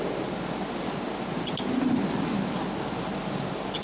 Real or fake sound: real